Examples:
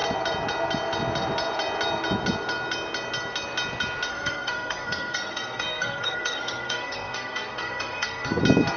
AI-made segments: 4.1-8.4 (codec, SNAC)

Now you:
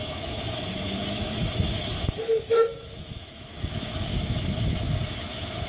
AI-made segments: 0.0-5.7 (autoencoder, DAC-VAE)

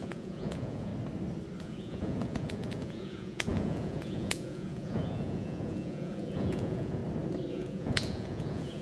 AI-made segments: 0.0-0.9 (vocoder, Vocos); 1.6-7.0; 7.5-8.8

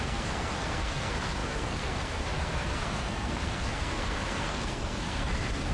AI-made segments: 0.0-5.7 (codec, SNAC)

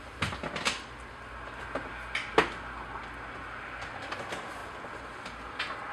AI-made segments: none

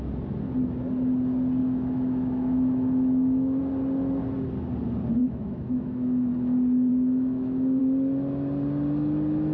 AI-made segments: 1.6-3.6 (autoencoder, DAC-VAE); 5.2-6.3; 6.9-7.8

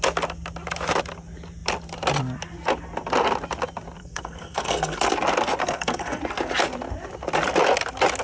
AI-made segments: 4.0-5.0 (codec, SNAC); 5.6-6.2